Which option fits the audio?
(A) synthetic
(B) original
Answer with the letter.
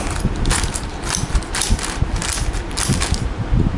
B